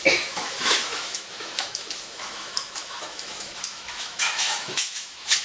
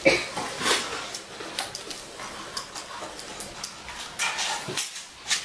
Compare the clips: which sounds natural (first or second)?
second